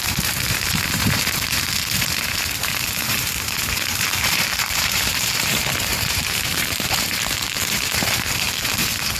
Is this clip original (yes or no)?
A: no